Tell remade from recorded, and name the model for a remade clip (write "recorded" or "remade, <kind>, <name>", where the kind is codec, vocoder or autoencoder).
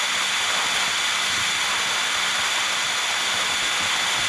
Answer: recorded